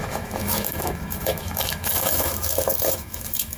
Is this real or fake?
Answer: fake